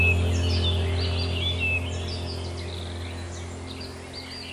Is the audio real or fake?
real